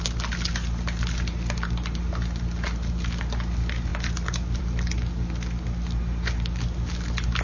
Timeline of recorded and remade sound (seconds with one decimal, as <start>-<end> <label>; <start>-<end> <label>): 0.0-7.4 recorded